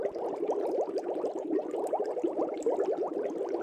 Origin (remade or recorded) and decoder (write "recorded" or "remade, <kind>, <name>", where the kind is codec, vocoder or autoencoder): recorded